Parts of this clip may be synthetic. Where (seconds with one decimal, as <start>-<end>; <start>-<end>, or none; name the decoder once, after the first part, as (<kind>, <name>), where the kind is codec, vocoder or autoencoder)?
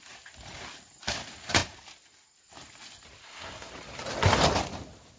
3.2-3.7 (codec, SNAC)